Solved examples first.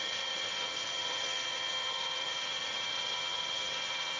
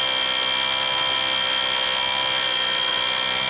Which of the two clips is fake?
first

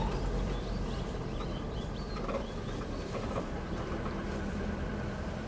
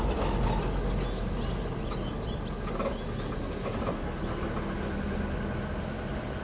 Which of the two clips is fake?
first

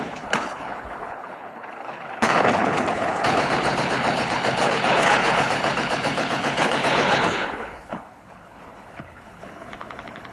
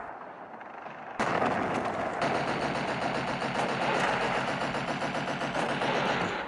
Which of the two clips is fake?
first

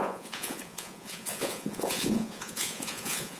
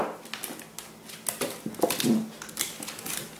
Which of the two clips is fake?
first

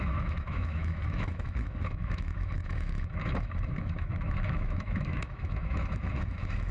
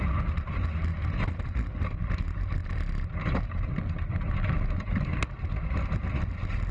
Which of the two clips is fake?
first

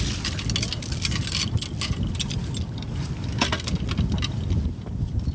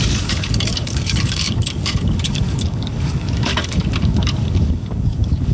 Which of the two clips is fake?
second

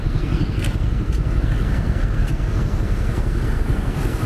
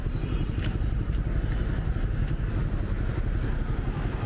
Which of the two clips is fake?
first